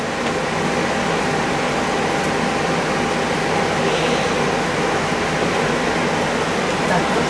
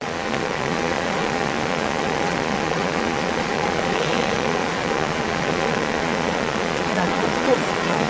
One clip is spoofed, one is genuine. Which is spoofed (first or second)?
second